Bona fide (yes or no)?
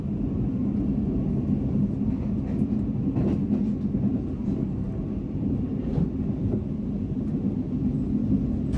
yes